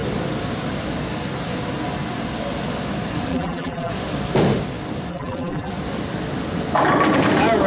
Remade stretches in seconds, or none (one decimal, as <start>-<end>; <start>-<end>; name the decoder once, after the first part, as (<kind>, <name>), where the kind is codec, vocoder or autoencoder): 3.3-3.9 (vocoder, BigVGAN v2); 5.1-5.7